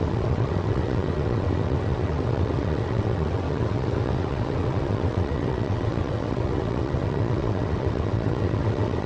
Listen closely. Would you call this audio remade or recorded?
remade